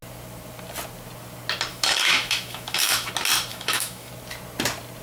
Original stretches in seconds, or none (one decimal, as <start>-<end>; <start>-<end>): 0.0-1.7; 3.1-3.5; 4.1-5.0